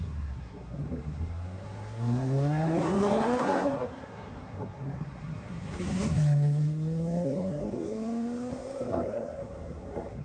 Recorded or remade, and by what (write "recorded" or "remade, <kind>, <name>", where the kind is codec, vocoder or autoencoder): remade, codec, SNAC